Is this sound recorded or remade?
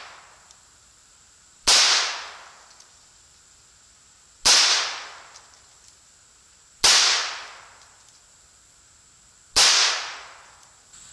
recorded